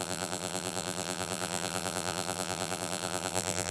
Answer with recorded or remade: remade